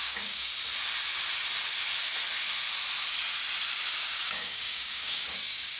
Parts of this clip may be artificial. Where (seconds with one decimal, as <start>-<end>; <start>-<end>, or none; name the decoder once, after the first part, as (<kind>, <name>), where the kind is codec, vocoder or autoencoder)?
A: 0.0-0.5 (codec, DAC); 4.0-5.8